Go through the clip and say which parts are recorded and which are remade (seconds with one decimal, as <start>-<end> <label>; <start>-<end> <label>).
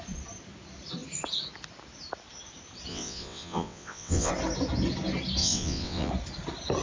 0.0-2.9 recorded; 2.9-4.3 remade; 4.3-5.4 recorded; 5.4-6.1 remade; 6.1-6.8 recorded